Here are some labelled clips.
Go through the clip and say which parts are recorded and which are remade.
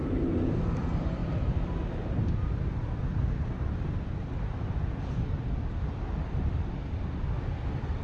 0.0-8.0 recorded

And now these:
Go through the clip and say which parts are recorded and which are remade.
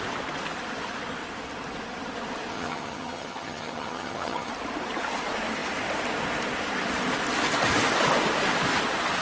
0.0-2.5 recorded; 2.5-4.5 remade; 4.5-9.2 recorded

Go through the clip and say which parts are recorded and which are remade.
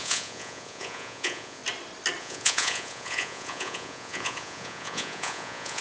0.0-1.6 remade; 1.6-2.2 recorded; 2.2-5.8 remade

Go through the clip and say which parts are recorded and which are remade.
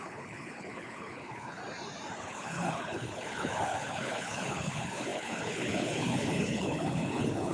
0.0-1.6 remade; 1.6-2.2 recorded; 2.2-7.5 remade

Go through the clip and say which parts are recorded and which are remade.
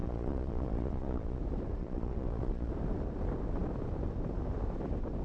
0.0-1.4 remade; 1.4-1.8 recorded; 1.8-2.7 remade; 2.7-5.2 recorded